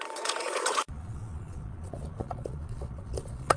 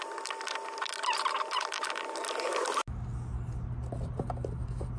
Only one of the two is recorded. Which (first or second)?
second